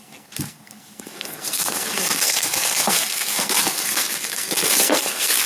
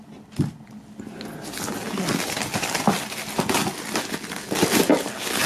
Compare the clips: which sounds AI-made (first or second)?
first